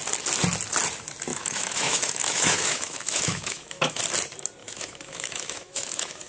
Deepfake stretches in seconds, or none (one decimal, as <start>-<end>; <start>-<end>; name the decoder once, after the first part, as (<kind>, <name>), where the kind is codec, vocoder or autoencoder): 1.3-4.0 (autoencoder, DAC-VAE); 4.6-6.3